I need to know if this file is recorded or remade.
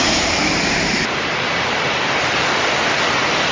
remade